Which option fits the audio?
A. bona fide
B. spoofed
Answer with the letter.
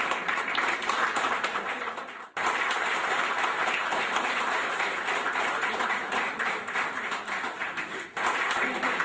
B